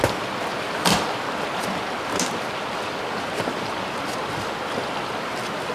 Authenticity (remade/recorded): recorded